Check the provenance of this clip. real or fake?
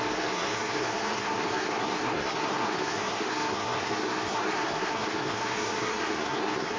fake